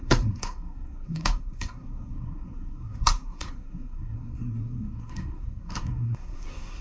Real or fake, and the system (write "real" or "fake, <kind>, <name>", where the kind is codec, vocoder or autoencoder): fake, codec, SNAC